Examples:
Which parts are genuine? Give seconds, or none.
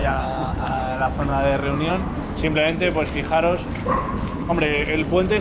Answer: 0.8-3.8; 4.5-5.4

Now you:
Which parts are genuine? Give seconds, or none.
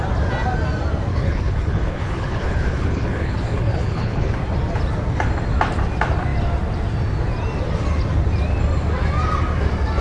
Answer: 0.0-1.1; 4.3-10.0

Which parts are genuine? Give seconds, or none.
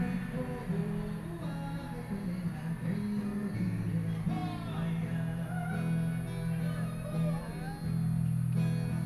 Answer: 0.0-9.1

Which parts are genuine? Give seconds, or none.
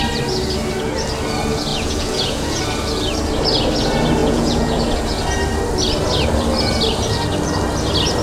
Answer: 0.0-1.7; 2.6-4.2; 4.8-8.2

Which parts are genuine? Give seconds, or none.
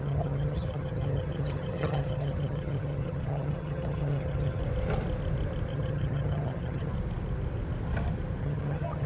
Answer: 4.6-5.7; 6.9-8.4